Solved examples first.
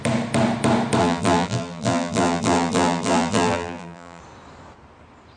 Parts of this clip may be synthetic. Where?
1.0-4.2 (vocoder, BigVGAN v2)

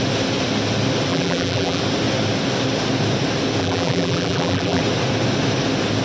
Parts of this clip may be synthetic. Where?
1.1-1.8 (vocoder, BigVGAN v2); 3.6-4.8

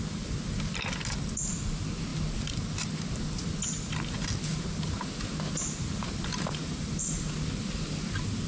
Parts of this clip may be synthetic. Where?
none

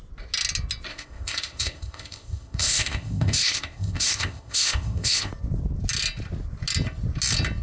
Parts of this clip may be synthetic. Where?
0.9-5.3 (codec, ZipCodec)

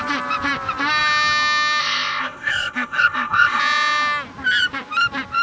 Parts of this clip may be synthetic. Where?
1.8-3.6 (codec, ZipCodec)